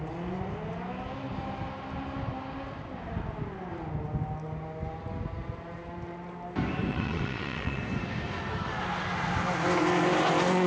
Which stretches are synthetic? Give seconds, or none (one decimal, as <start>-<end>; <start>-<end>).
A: 6.9-7.8